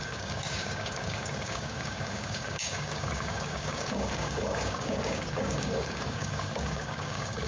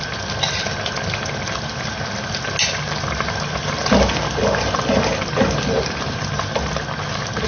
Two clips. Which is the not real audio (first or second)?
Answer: first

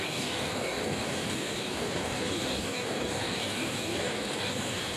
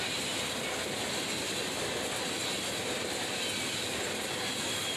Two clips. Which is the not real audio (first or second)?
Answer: first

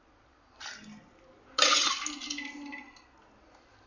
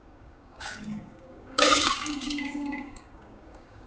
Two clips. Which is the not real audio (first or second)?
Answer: second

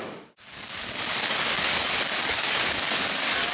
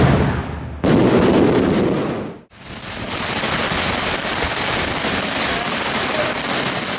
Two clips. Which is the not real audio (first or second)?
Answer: first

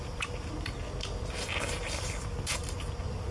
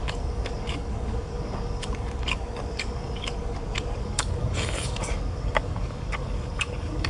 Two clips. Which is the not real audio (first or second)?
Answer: second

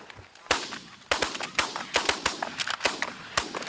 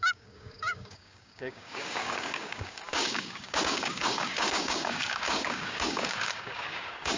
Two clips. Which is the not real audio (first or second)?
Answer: second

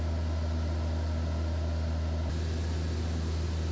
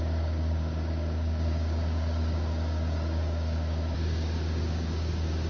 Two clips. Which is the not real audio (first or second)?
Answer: second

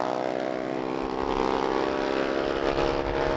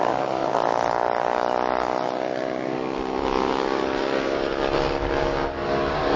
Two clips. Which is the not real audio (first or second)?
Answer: second